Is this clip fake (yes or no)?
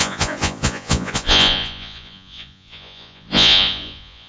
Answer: yes